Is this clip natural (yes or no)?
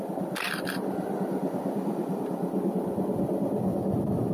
yes